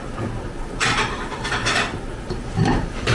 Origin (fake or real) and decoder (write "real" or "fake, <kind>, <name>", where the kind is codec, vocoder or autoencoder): fake, vocoder, BigVGAN v2